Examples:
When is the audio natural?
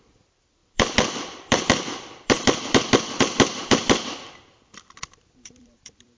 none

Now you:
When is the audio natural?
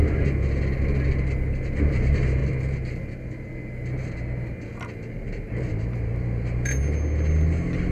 0.0-7.9